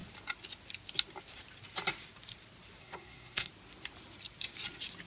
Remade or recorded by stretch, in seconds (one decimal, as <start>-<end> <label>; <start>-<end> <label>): 0.0-2.8 recorded; 2.8-3.5 remade; 3.5-5.1 recorded